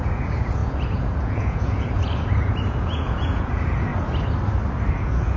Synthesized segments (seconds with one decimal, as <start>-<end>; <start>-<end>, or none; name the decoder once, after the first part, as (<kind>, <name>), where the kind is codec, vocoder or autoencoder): 0.0-3.9 (vocoder, Vocos); 4.9-5.4